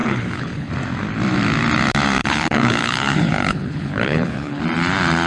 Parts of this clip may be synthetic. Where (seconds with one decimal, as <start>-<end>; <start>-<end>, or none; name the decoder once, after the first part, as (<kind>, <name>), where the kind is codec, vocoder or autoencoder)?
0.0-0.7 (codec, HILCodec); 2.2-4.6